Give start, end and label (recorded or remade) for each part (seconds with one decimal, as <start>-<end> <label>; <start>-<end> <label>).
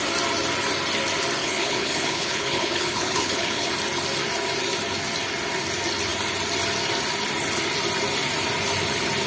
0.0-1.4 recorded; 1.4-3.7 remade; 3.7-9.3 recorded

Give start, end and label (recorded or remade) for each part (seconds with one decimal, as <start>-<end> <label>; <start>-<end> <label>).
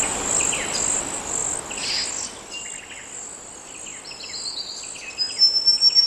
0.0-6.1 recorded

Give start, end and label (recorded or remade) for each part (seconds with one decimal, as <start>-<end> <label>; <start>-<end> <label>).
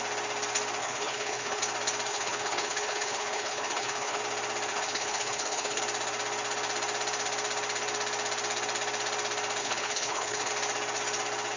0.0-0.8 recorded; 0.8-1.6 remade; 1.6-2.1 recorded; 2.1-4.2 remade; 4.2-4.7 recorded; 4.7-5.8 remade; 5.8-9.6 recorded; 9.6-10.5 remade; 10.5-11.6 recorded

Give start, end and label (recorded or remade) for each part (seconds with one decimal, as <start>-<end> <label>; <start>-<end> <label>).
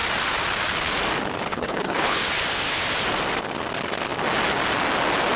0.0-1.5 recorded; 1.5-2.2 remade; 2.2-5.4 recorded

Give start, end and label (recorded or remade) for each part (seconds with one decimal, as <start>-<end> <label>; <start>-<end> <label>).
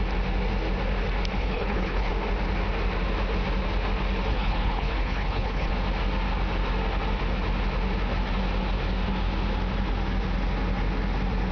0.0-1.4 recorded; 1.4-2.1 remade; 2.1-4.3 recorded; 4.3-5.7 remade; 5.7-11.5 recorded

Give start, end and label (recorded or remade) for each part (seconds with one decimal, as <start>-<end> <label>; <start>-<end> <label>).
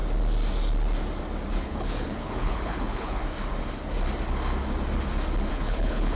0.0-1.5 recorded; 1.5-3.2 remade; 3.2-5.5 recorded; 5.5-6.2 remade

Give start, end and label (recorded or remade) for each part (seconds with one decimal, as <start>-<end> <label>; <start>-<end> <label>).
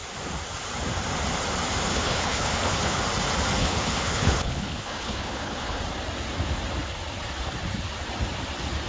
0.0-1.9 recorded; 1.9-3.0 remade; 3.0-3.6 recorded; 3.6-5.8 remade; 5.8-8.9 recorded